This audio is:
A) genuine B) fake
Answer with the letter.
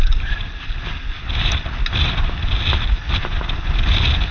A